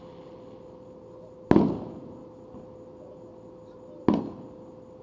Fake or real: real